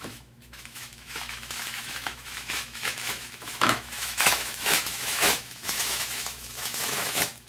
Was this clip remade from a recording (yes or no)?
yes